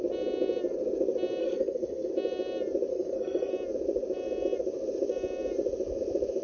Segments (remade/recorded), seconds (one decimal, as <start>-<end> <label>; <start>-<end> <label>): 0.0-1.4 recorded; 1.4-2.1 remade; 2.1-2.9 recorded; 2.9-3.5 remade; 3.5-6.4 recorded